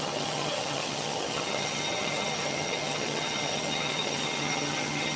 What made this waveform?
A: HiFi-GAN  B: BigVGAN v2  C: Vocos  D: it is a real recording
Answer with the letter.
A